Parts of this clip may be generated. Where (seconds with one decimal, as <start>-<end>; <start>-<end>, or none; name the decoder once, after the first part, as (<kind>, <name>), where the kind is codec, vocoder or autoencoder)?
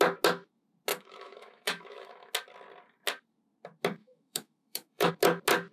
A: 0.9-2.3 (autoencoder, DAC-VAE); 4.0-5.1